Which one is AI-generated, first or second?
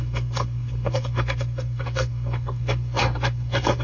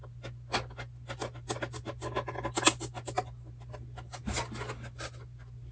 first